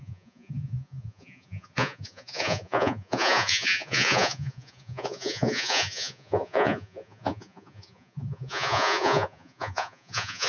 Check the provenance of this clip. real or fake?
fake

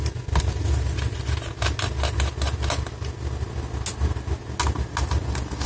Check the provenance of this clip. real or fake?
real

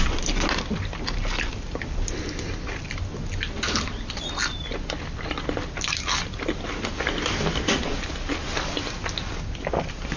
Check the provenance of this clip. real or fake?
real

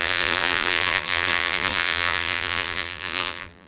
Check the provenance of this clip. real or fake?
fake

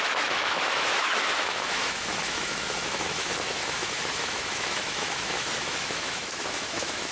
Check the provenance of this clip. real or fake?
fake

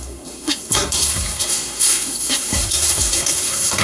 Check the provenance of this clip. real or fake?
fake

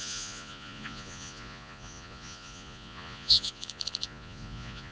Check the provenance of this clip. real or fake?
fake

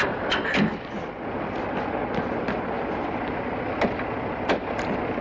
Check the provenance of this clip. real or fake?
real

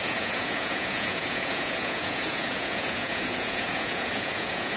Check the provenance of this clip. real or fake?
fake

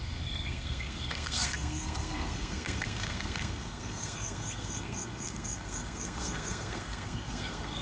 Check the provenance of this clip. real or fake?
fake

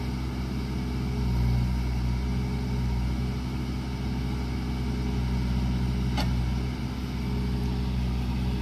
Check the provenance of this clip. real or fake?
real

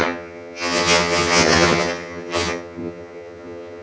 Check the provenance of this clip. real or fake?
fake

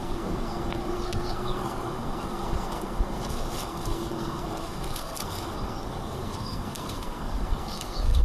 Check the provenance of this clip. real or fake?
fake